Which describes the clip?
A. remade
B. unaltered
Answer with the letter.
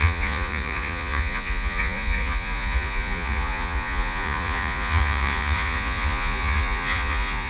A